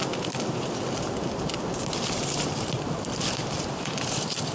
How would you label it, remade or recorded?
remade